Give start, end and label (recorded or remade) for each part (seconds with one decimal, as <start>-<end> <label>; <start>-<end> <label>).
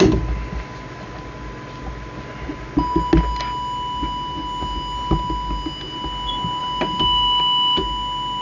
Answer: 0.0-6.6 recorded; 6.6-7.4 remade; 7.4-8.4 recorded